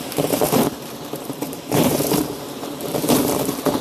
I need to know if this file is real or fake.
fake